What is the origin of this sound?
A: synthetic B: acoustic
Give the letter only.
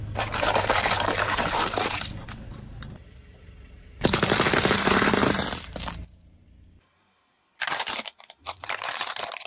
A